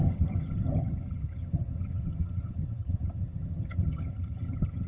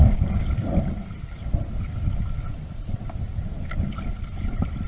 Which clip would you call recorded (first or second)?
second